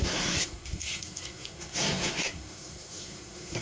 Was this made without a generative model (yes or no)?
no